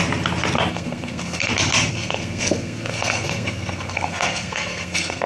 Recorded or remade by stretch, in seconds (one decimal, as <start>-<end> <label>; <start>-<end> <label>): 0.0-0.7 recorded; 0.7-1.5 remade; 1.5-1.9 recorded; 1.9-5.3 remade